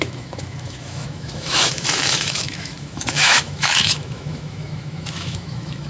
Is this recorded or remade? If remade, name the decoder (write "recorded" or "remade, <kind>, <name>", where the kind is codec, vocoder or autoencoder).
remade, autoencoder, DAC-VAE